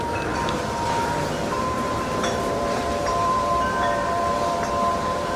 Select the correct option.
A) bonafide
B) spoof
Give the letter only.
B